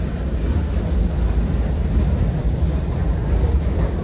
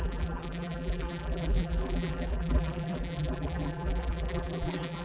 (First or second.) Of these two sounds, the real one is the first